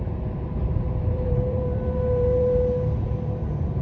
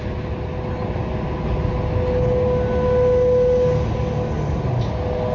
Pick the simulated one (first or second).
first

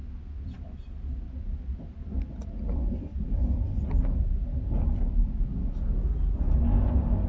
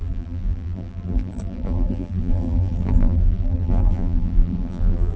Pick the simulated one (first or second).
second